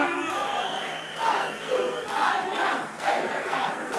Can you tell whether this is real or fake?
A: fake